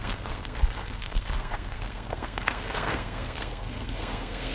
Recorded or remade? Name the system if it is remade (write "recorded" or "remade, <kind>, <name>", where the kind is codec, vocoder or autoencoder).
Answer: remade, codec, SNAC